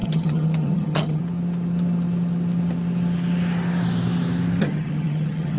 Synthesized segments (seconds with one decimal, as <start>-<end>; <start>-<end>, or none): 0.0-1.2; 4.6-5.6